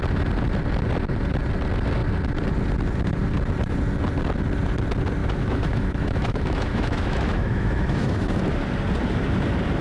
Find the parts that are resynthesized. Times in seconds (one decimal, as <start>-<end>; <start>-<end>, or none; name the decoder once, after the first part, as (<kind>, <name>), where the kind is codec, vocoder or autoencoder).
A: 5.2-8.4 (autoencoder, DAC-VAE)